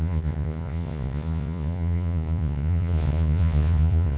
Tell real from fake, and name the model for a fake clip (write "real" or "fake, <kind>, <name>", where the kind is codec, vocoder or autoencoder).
fake, vocoder, Vocos